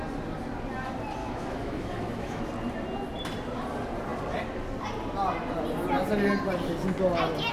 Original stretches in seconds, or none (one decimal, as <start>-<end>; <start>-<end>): 0.0-1.2; 2.4-7.5